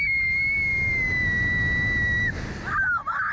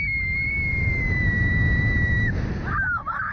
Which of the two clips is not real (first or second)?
second